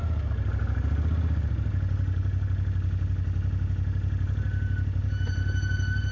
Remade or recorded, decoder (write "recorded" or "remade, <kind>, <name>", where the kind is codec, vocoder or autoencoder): recorded